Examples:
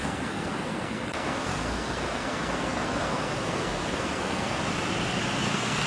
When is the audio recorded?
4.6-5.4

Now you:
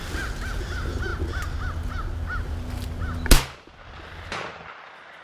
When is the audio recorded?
0.0-5.2

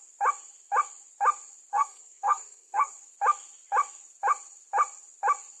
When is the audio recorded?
0.0-1.7; 2.9-5.6

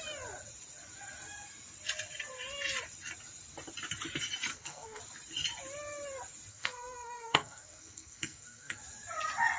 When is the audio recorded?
0.0-4.5; 5.0-6.5; 8.8-9.6

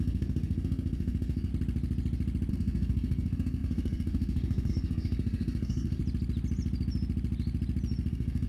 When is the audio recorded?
1.5-2.5; 6.0-8.1

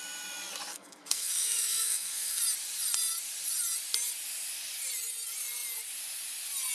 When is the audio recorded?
0.0-0.7; 2.4-6.7

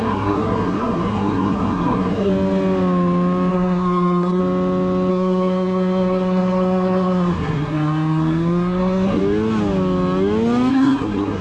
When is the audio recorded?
2.3-3.5; 4.4-5.1; 9.2-10.7